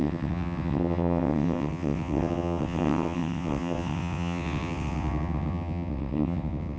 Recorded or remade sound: remade